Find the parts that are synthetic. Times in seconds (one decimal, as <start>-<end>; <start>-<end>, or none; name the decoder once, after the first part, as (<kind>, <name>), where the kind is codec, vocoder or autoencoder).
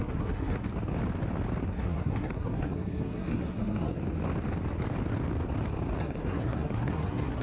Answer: 0.0-0.7 (codec, SNAC); 1.7-4.0; 6.0-7.4